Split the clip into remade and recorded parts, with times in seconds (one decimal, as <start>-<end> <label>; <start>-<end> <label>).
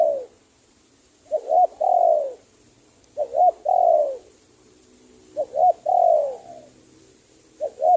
0.0-8.0 recorded